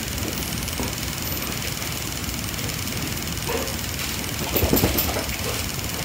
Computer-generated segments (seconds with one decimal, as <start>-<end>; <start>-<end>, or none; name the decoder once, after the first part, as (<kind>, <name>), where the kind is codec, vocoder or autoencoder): none